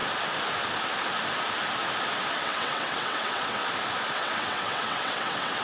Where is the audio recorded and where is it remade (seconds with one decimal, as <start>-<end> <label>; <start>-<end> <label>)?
0.0-2.3 recorded; 2.3-3.6 remade; 3.6-4.1 recorded; 4.1-5.6 remade